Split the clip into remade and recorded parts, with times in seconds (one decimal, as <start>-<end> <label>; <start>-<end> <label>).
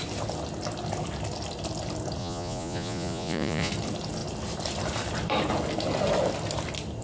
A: 0.0-2.2 recorded; 2.2-3.7 remade; 3.7-7.0 recorded